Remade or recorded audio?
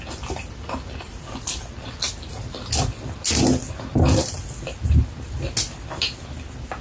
recorded